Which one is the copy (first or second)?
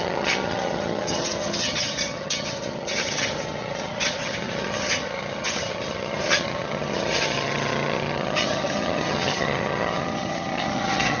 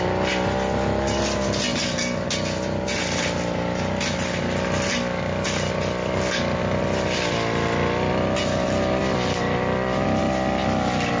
first